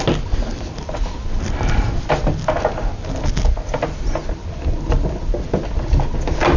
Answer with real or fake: real